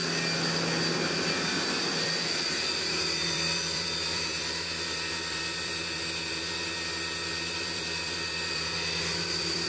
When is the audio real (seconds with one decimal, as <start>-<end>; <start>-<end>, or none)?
0.0-2.5